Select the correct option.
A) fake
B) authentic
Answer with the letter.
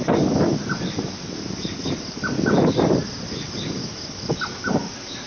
B